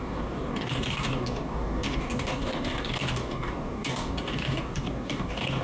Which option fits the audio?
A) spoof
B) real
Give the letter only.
A